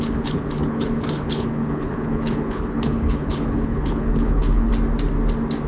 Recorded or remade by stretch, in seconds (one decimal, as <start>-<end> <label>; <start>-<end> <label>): 0.0-4.7 remade; 4.7-5.7 recorded